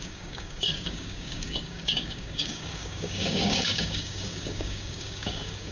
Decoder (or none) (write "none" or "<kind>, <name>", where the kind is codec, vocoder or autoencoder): codec, DAC